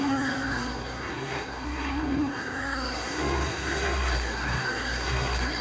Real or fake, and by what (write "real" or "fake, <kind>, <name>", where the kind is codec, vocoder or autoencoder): fake, codec, SNAC